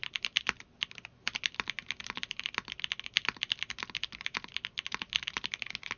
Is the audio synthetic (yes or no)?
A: no